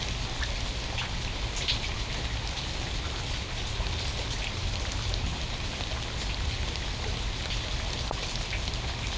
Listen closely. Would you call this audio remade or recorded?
recorded